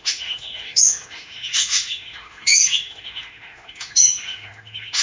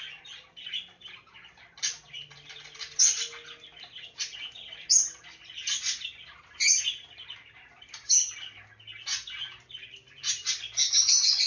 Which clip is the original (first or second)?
second